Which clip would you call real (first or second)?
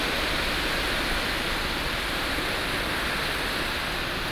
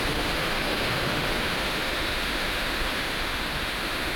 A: first